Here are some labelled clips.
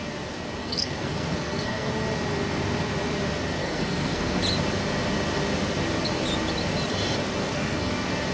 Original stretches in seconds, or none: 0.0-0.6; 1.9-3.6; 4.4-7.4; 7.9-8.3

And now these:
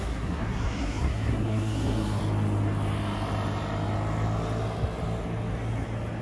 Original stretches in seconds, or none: 2.2-6.2

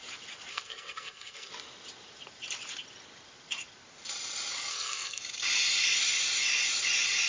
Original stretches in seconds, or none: 0.0-0.5; 1.5-4.7; 5.2-7.3

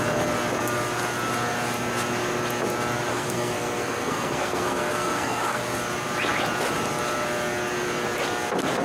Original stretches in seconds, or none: 0.0-3.1; 5.6-8.8

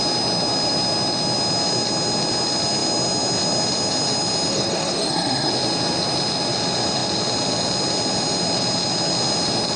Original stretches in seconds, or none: 0.0-4.5; 5.5-9.8

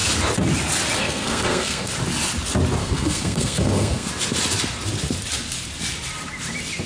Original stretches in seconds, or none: 0.0-1.0; 1.9-2.8; 4.1-6.9